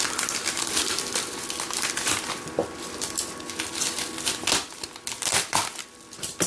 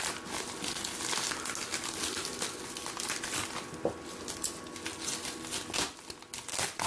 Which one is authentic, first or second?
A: second